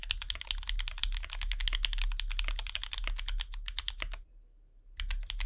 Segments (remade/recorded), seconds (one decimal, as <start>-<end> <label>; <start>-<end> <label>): 0.0-5.5 recorded